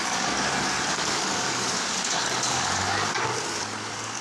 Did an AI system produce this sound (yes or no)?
yes